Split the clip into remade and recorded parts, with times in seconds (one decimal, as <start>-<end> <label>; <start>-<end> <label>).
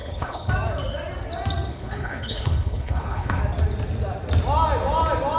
0.0-0.5 remade; 0.5-1.7 recorded; 1.7-3.4 remade; 3.4-5.4 recorded